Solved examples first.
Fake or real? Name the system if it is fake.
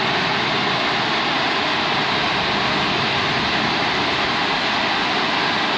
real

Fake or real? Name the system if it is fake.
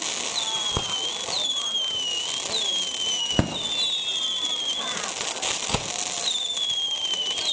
real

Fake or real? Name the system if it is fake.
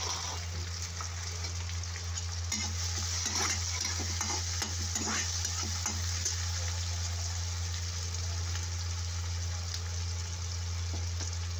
real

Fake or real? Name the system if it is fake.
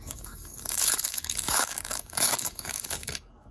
fake, codec, DAC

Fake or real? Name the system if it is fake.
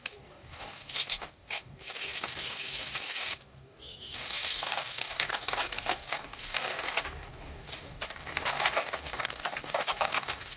fake, codec, DAC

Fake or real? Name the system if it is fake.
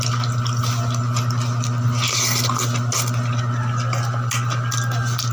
real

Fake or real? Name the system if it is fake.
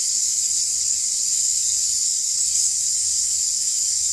fake, codec, DAC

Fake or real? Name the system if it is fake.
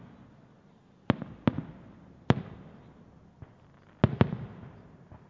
real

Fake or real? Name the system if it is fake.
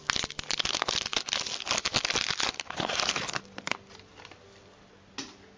real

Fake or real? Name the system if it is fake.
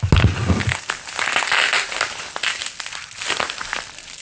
real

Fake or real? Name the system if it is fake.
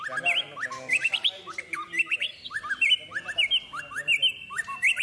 real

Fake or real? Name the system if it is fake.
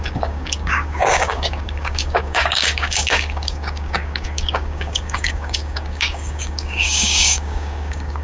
fake, codec, DAC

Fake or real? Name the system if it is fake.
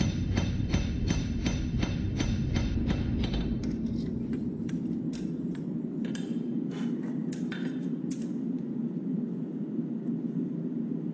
real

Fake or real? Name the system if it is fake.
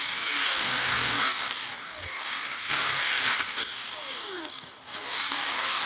fake, codec, DAC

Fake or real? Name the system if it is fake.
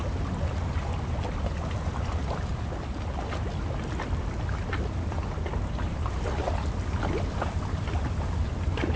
real